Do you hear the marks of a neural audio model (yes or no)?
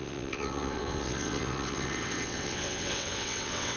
yes